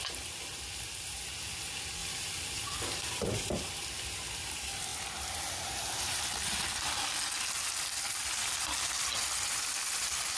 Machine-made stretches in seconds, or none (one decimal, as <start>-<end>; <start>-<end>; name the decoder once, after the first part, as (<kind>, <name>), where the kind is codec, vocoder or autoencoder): 2.0-3.5 (vocoder, BigVGAN v2)